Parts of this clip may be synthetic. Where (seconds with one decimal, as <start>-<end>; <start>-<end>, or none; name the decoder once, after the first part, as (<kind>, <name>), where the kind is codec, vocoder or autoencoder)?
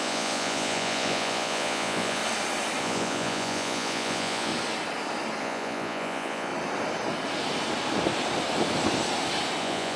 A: 0.0-2.2 (vocoder, Vocos); 2.8-4.5; 5.4-6.5; 9.6-10.0